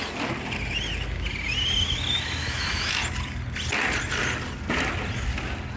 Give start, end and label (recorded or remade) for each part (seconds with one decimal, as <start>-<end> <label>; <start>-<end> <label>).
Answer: 0.0-2.4 recorded; 2.4-3.0 remade; 3.0-5.8 recorded